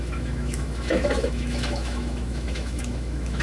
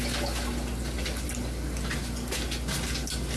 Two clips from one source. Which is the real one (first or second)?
second